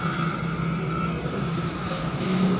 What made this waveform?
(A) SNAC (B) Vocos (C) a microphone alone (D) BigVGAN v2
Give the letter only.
C